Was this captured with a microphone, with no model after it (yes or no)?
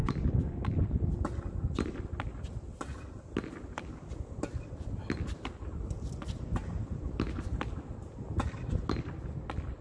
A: yes